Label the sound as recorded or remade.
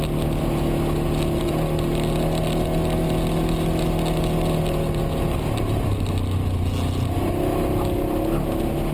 recorded